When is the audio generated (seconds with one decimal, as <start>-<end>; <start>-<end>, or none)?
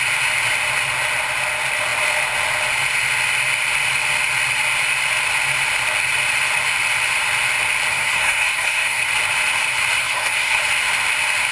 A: 7.9-9.0; 10.0-10.6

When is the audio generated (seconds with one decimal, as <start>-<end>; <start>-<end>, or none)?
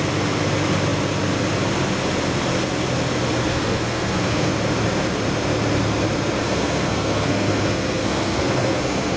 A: 3.5-4.5; 6.4-9.2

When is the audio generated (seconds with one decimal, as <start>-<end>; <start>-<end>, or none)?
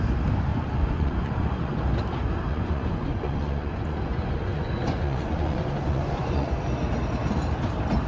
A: 0.5-1.8; 2.5-6.6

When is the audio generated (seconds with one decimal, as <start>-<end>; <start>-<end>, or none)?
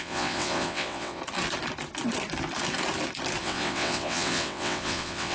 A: 0.0-1.2; 3.4-5.3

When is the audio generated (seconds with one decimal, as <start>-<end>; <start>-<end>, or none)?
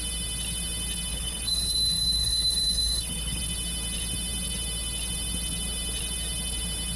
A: 1.1-3.4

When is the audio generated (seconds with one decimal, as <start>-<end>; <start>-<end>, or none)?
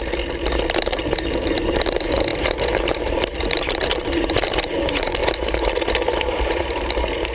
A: 0.0-5.2; 6.3-7.3